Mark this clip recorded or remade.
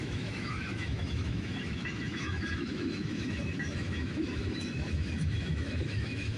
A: remade